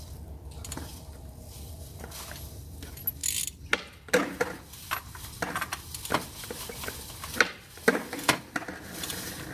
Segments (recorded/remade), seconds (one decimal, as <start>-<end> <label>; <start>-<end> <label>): 0.0-9.5 recorded